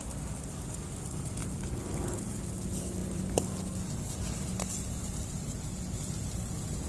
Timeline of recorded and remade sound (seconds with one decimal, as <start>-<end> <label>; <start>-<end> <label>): 0.0-6.9 recorded